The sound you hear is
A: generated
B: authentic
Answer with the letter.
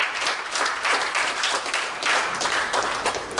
A